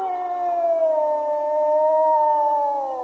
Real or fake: real